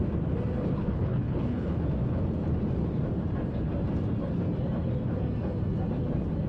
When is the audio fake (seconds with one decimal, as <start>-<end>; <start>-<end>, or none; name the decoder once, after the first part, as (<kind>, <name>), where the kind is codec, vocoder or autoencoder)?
0.7-1.8 (codec, HILCodec)